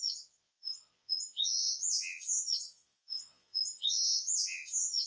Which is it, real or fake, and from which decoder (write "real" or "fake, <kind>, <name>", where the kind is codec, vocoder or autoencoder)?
fake, vocoder, Vocos